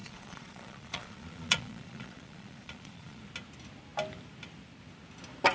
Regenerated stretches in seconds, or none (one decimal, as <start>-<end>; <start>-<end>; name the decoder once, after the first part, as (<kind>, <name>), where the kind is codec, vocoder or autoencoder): 0.0-3.2 (vocoder, Vocos)